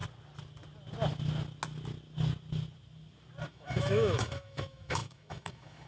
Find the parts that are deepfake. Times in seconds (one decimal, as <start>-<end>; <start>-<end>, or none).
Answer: 3.5-5.9